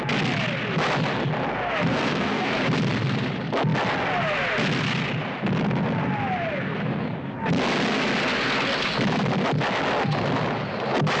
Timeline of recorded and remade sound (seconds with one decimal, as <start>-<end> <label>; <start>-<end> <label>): 0.0-1.9 recorded; 1.9-2.5 remade; 2.5-11.2 recorded